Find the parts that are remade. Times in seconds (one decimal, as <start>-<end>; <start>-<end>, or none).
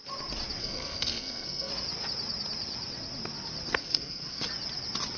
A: 0.6-1.7; 3.8-4.5